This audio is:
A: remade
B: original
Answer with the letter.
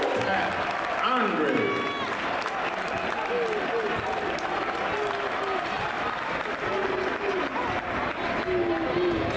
B